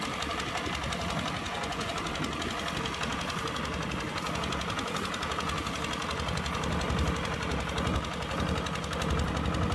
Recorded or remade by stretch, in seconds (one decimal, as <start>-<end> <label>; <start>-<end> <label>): 0.0-1.4 recorded; 1.4-1.9 remade; 1.9-9.7 recorded